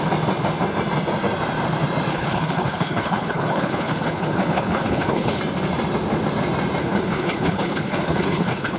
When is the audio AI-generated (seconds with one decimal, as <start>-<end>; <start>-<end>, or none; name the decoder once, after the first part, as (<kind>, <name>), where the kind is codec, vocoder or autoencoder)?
2.1-5.4 (codec, HILCodec); 6.8-8.8